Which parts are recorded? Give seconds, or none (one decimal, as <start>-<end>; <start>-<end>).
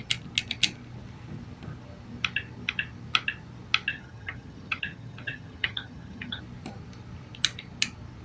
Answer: 0.0-3.9; 6.4-8.2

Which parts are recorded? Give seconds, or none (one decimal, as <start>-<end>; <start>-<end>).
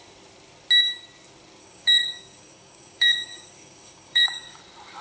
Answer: 0.0-1.6; 4.6-5.0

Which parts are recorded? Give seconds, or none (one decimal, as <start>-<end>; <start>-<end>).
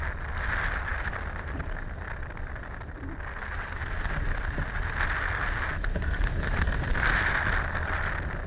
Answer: 0.0-8.5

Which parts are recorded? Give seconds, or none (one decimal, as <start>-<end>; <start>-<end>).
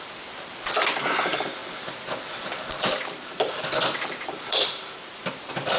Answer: none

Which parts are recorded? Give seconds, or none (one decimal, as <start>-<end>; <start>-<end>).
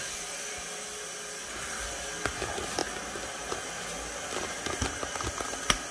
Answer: 0.0-5.9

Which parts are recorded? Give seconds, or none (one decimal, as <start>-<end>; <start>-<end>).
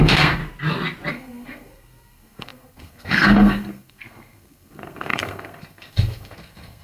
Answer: 0.4-1.1